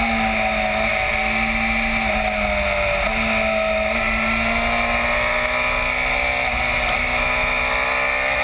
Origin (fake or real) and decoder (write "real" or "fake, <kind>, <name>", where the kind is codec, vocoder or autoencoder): real